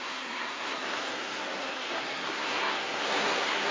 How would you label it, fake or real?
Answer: fake